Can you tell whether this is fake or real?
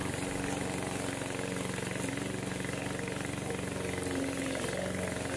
real